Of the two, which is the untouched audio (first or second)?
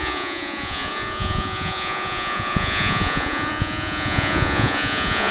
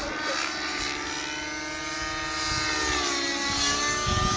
second